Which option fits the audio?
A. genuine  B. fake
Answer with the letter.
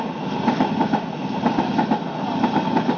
A